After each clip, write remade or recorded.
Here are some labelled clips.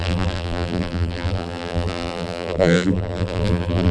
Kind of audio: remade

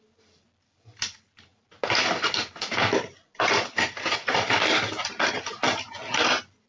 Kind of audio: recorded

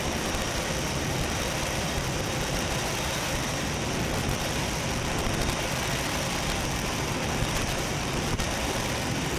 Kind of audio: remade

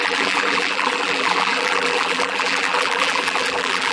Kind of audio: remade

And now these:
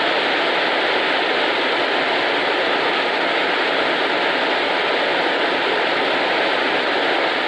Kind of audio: recorded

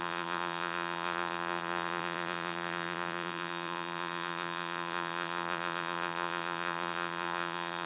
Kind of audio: remade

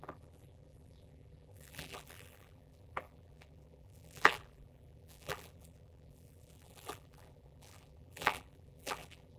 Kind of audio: remade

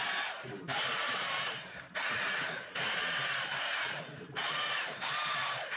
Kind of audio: remade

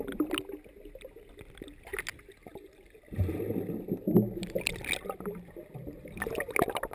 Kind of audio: recorded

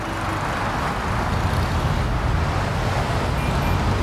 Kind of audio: recorded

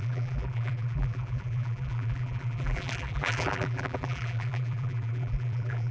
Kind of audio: remade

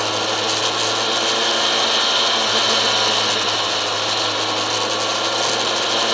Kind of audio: recorded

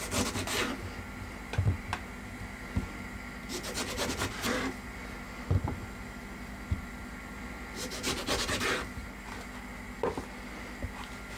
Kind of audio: recorded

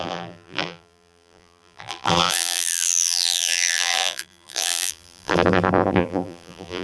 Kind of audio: remade